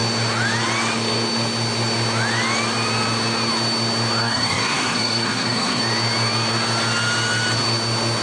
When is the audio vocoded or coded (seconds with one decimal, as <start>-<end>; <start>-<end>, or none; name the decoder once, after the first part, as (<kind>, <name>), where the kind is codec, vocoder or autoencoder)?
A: 4.2-5.8 (codec, SNAC)